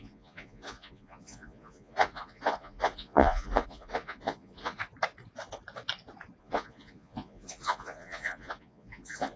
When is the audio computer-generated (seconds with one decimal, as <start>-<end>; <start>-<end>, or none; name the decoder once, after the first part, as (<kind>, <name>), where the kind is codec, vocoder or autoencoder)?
0.0-4.8 (vocoder, Vocos); 6.4-9.4